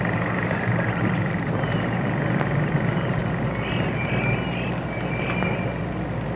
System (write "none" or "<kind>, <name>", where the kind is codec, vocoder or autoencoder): none